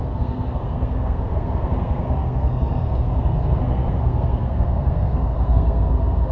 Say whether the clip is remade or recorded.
remade